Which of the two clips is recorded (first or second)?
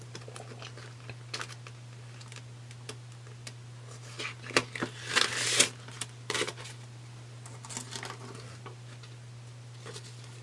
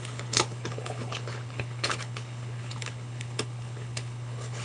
first